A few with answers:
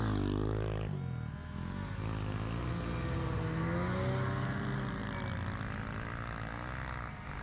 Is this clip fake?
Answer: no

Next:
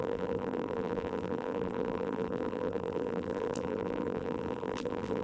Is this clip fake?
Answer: yes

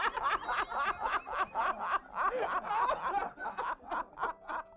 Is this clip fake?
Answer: no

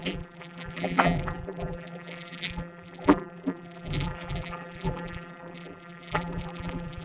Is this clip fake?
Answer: yes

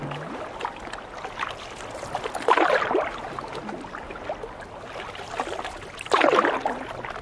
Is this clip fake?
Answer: no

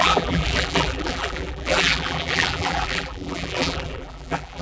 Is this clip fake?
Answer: yes